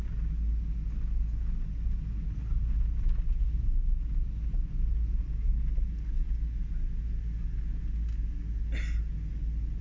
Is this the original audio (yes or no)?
yes